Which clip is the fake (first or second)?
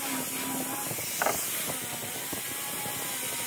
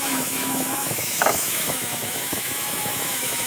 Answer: second